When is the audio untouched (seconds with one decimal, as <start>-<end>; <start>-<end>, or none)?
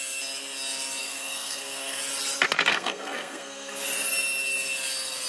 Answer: 0.0-1.0; 2.0-2.7; 3.8-5.3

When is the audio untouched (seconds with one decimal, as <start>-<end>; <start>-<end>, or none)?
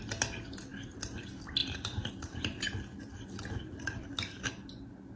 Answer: 0.0-5.2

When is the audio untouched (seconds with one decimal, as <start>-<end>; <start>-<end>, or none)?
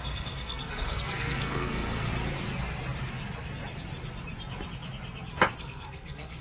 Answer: 2.1-5.6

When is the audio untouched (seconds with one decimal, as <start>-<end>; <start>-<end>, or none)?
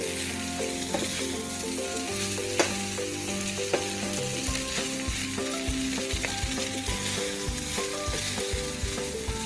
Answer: 0.0-9.5